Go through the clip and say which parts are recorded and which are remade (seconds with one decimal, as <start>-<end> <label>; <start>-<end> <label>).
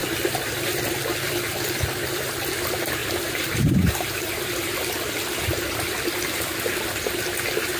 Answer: 0.0-3.0 recorded; 3.0-4.3 remade; 4.3-7.8 recorded